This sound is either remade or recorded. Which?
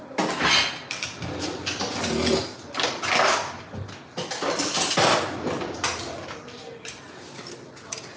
recorded